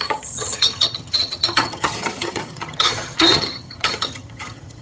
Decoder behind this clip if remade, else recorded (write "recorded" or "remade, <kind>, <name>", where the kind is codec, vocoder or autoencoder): remade, vocoder, HiFi-GAN